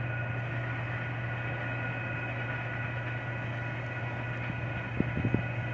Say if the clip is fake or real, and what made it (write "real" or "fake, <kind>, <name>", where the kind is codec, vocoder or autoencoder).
real